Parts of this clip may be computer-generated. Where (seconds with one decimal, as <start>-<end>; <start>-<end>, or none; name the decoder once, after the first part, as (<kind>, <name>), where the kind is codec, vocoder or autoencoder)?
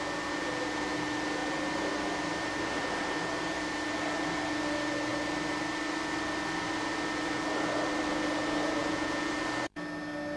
8.8-9.3 (vocoder, Vocos)